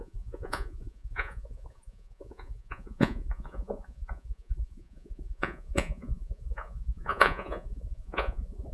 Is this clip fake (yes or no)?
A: yes